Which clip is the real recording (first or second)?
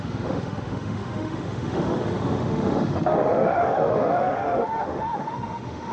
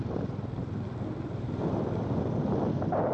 second